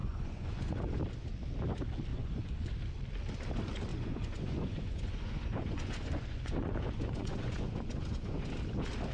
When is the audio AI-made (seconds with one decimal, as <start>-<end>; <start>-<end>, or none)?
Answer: 0.0-1.0; 2.1-2.7; 3.9-8.5